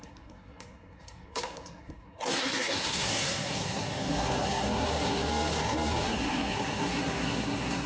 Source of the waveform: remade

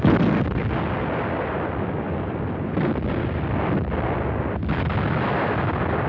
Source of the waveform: recorded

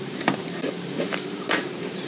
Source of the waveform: remade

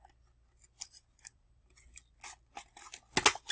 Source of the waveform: recorded